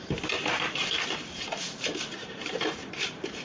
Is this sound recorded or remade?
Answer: remade